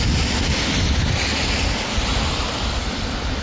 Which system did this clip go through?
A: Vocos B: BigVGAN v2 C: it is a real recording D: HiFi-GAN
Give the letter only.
C